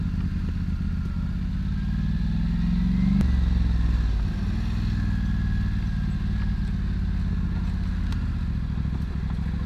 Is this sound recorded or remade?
recorded